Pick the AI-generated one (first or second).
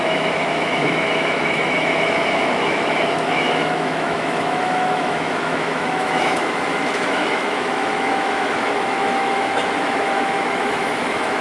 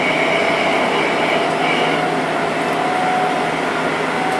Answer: first